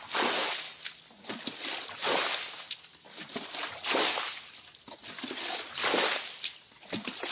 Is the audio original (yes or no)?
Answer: yes